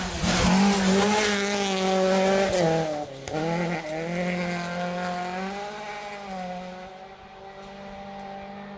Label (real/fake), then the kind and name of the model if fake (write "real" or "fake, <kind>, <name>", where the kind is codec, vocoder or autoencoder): real